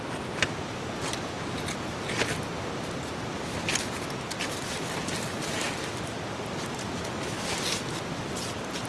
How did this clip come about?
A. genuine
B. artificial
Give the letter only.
A